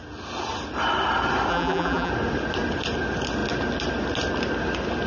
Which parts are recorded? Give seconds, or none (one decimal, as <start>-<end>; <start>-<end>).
0.0-1.5; 2.1-5.1

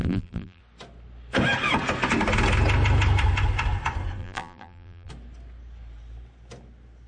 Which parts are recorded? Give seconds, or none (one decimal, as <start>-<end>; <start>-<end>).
0.6-4.2; 5.1-7.1

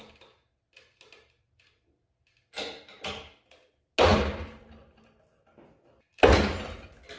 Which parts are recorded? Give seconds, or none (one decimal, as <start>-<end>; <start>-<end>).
0.0-4.1; 5.0-7.2

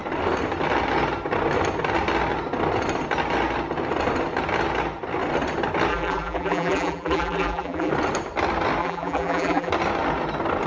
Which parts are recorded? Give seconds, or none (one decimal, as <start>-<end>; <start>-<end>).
0.0-5.9; 7.9-8.8; 9.7-10.7

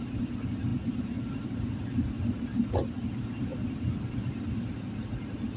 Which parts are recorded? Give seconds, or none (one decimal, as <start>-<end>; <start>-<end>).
0.0-0.7; 1.3-3.5